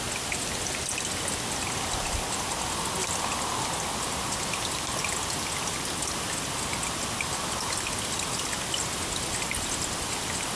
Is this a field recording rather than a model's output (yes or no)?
yes